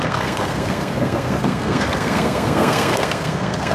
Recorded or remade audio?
remade